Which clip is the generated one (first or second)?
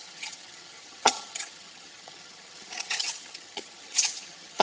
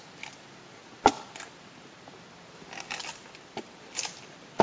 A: first